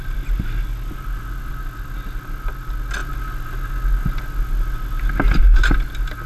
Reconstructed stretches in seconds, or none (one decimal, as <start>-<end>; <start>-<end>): none